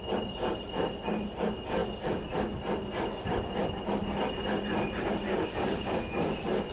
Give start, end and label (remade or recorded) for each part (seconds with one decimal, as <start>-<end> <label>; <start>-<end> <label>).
0.0-6.7 recorded